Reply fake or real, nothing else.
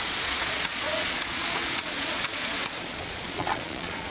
fake